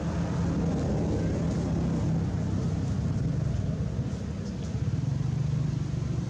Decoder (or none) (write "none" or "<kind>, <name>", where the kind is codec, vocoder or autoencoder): none